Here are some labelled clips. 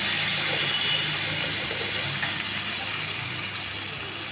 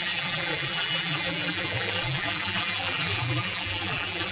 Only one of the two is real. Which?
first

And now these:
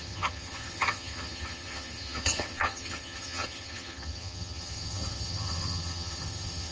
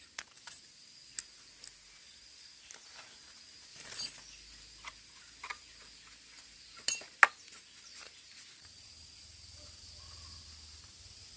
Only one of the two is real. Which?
second